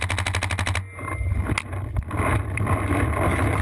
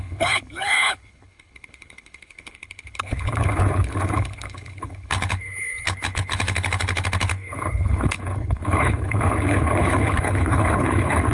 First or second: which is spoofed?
second